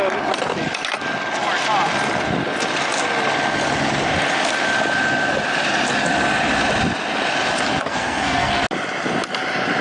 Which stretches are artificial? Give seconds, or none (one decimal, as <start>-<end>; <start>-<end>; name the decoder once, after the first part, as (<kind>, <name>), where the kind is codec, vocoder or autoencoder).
7.8-8.6 (codec, SNAC)